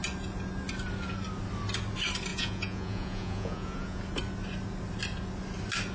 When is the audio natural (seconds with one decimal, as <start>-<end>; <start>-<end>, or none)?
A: 0.0-2.3; 4.0-5.9